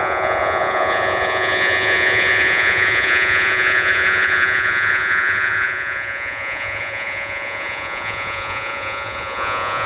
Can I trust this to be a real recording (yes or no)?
no